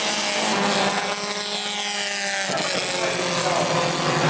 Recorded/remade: recorded